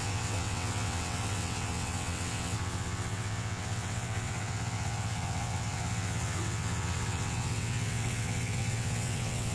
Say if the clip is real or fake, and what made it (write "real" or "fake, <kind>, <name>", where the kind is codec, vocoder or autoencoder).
fake, vocoder, WaveNeXt